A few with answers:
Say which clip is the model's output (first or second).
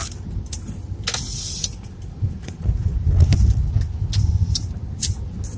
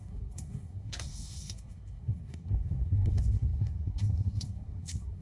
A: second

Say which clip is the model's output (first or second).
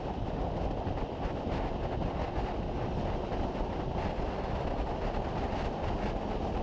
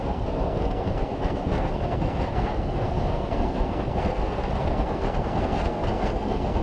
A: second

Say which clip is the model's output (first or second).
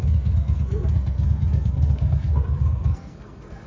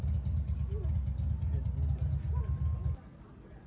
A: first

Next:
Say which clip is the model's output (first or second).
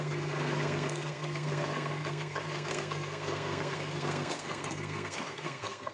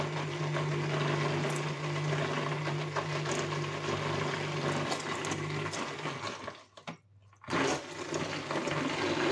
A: first